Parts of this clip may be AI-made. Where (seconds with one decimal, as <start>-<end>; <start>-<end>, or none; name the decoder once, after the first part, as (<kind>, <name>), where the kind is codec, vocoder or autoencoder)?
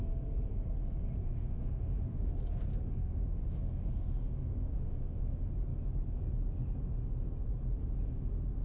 1.2-2.3 (autoencoder, DAC-VAE); 2.7-5.2